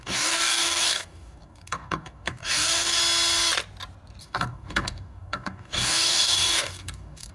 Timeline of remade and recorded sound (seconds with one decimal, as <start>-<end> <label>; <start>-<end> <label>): 0.0-3.0 remade; 3.0-4.2 recorded; 4.2-7.3 remade